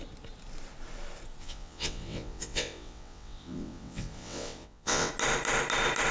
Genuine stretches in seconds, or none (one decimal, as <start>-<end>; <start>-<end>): 0.0-1.4; 5.1-6.1

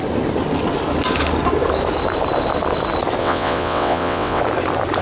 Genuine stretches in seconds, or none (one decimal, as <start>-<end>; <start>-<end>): 0.0-3.2; 4.4-5.0

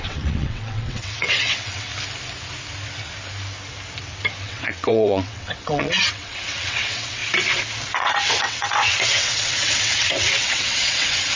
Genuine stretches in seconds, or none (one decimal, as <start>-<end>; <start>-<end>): 1.9-4.4; 7.2-8.0

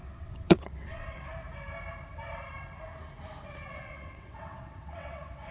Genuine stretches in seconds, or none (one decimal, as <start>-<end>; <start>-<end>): 1.3-3.7